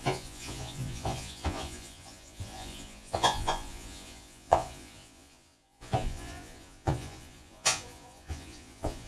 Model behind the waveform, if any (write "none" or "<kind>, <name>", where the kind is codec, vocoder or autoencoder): vocoder, Vocos